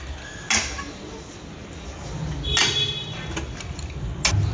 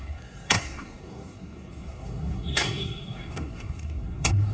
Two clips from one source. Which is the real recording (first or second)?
first